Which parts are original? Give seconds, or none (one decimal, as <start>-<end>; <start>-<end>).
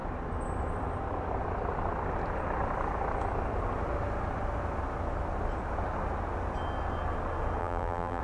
0.0-7.6